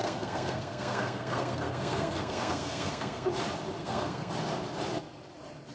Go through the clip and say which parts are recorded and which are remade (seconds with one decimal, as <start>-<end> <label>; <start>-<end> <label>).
0.0-3.3 remade; 3.3-3.8 recorded; 3.8-4.3 remade; 4.3-5.7 recorded